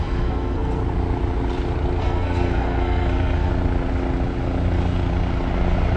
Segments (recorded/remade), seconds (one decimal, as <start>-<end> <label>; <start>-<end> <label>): 0.0-0.8 remade; 0.8-2.0 recorded; 2.0-3.5 remade; 3.5-6.0 recorded